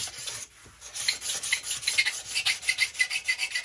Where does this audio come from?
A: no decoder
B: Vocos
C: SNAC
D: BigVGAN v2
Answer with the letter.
A